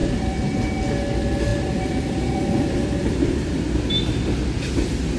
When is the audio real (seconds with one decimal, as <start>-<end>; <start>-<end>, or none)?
0.8-1.5; 3.6-5.2